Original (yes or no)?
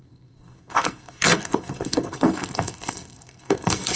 no